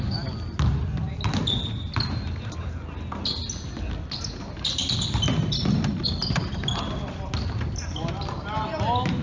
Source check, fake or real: real